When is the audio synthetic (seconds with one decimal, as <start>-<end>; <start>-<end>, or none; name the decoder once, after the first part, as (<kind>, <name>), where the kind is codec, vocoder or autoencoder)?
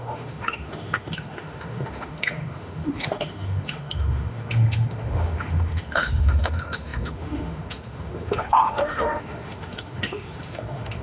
0.0-11.0 (autoencoder, DAC-VAE)